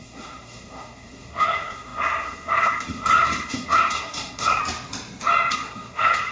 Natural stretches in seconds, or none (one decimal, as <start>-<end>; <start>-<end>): 4.6-5.5